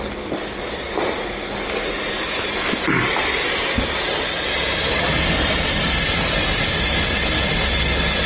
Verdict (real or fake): real